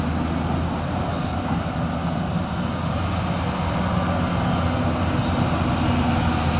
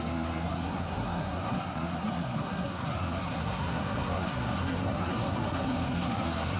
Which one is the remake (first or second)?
second